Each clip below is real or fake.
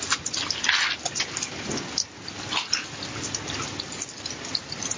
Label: real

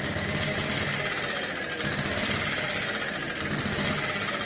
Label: real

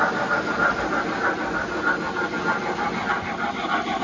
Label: real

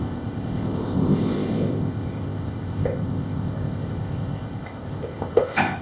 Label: fake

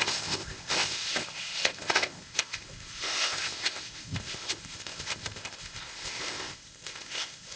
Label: fake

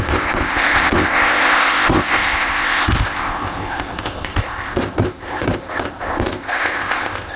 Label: fake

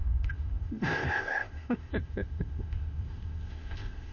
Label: fake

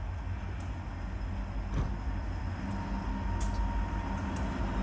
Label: real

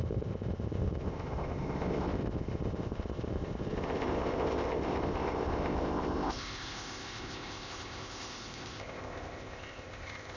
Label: fake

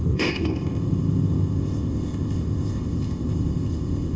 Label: fake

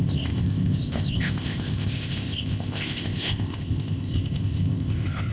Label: fake